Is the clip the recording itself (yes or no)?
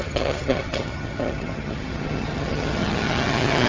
no